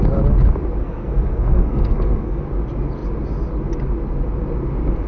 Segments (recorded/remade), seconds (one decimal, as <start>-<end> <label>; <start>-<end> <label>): 0.0-0.8 recorded; 0.8-2.4 remade; 2.4-5.1 recorded